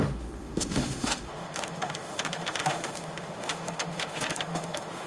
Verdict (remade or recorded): remade